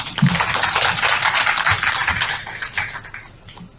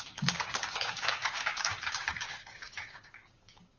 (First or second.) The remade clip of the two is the second